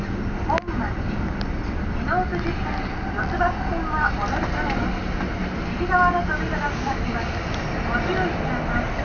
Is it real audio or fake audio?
real